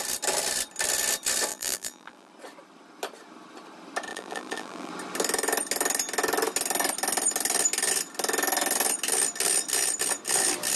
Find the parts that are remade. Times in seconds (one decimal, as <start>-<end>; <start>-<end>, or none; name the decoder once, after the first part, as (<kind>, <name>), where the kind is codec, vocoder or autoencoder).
1.5-2.3 (vocoder, BigVGAN v2); 4.1-4.9